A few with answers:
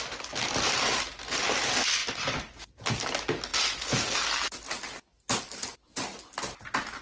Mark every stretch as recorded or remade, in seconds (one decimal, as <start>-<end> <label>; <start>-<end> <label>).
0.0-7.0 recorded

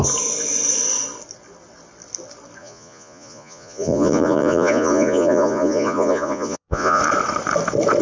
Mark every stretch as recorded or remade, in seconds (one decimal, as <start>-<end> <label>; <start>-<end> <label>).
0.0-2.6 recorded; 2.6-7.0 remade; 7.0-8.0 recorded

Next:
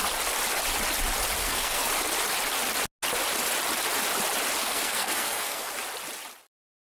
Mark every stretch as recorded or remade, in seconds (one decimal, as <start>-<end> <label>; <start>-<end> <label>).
0.0-1.4 recorded; 1.4-1.9 remade; 1.9-4.6 recorded; 4.6-5.7 remade; 5.7-6.8 recorded

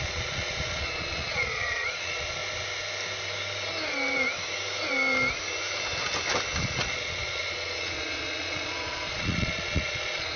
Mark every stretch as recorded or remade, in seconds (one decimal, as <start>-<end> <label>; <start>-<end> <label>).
0.0-2.4 remade; 2.4-6.6 recorded; 6.6-10.4 remade

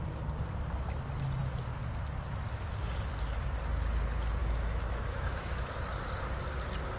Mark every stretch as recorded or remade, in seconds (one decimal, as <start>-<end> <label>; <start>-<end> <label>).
0.0-4.4 recorded; 4.4-5.7 remade; 5.7-7.0 recorded

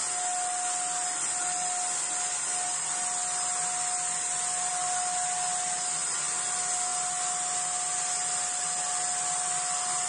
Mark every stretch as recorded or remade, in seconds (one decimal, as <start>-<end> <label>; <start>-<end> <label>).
0.0-10.1 recorded

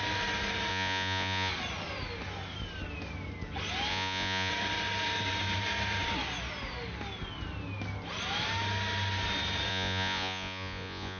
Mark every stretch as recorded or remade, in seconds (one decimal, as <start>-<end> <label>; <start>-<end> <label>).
0.0-0.7 recorded; 0.7-1.5 remade; 1.5-3.9 recorded; 3.9-4.5 remade; 4.5-9.7 recorded; 9.7-11.2 remade